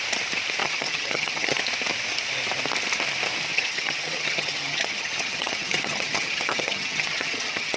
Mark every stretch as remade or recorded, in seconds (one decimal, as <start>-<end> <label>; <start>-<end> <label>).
0.0-0.6 recorded; 0.6-1.6 remade; 1.6-3.5 recorded; 3.5-7.8 remade